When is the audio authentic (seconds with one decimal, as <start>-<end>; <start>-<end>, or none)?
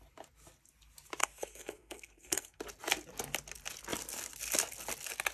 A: 0.0-1.2; 2.6-5.3